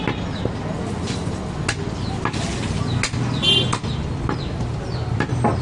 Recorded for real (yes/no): yes